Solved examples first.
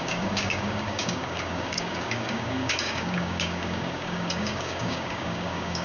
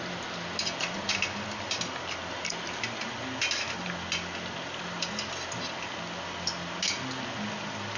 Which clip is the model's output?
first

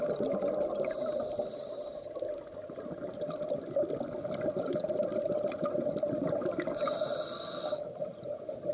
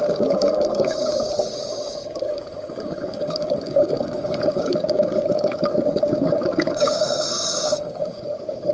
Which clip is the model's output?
second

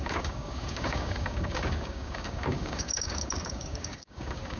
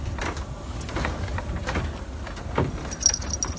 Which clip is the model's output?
first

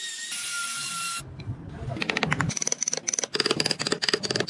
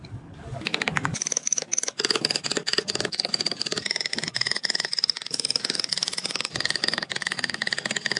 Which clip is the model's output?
second